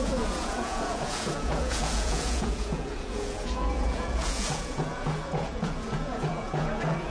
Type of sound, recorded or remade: remade